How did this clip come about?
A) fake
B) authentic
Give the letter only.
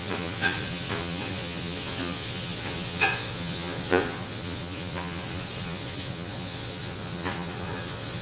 A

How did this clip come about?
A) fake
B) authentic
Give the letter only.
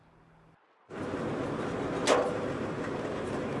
B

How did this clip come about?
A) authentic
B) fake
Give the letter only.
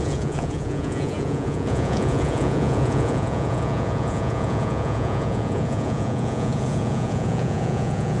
B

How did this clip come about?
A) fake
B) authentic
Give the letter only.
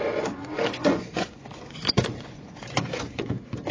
A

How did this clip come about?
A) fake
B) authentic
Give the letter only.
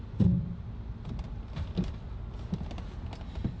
B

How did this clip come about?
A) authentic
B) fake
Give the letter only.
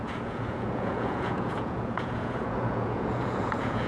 B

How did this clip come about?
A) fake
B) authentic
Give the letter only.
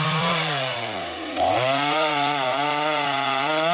A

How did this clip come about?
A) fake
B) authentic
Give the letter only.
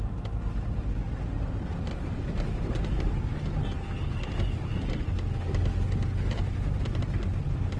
B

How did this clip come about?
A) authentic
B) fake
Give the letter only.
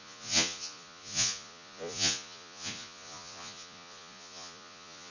B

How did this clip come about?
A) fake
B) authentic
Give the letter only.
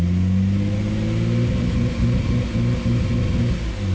B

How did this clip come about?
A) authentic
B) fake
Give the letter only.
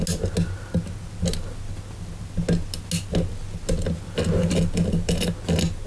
A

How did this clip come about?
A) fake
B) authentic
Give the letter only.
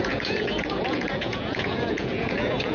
A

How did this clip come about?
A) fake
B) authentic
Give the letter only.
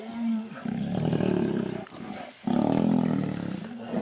B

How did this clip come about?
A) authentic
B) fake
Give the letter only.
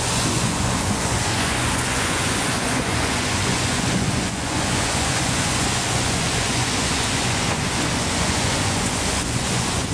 B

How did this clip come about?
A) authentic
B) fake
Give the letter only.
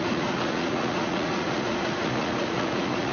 B